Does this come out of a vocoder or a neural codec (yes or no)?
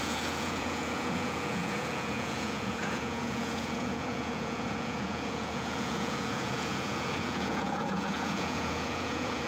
yes